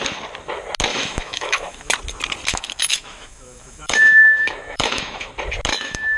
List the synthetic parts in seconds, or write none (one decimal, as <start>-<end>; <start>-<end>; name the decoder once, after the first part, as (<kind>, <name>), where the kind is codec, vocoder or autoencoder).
0.9-1.9 (autoencoder, DAC-VAE); 2.5-5.3; 5.7-6.2